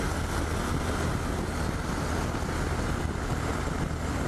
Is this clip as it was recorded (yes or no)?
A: yes